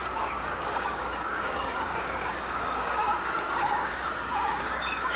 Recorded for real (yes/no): no